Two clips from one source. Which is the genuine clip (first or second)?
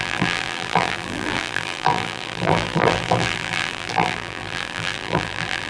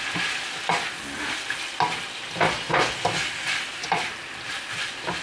second